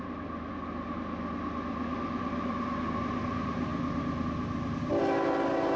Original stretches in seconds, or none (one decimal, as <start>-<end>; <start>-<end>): 0.0-5.8

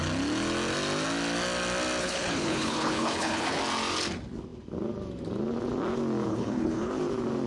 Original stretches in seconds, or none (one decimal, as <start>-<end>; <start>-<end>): 0.0-2.0; 3.6-6.3; 6.9-7.5

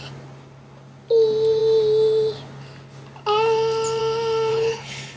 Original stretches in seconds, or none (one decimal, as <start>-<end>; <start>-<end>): 0.0-4.5

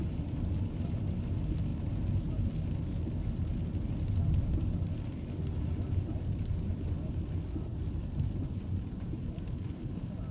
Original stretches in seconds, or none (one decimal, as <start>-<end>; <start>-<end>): 0.0-10.3

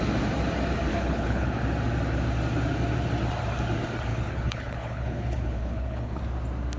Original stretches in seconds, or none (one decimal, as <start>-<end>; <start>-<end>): 0.0-0.9; 1.6-4.1; 6.2-6.8

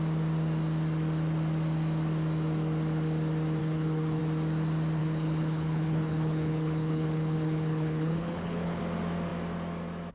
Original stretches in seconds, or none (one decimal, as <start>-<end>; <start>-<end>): 0.0-3.6; 4.2-5.0; 8.8-10.1

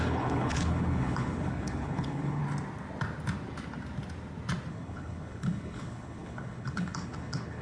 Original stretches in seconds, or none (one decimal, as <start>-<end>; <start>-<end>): 2.4-4.7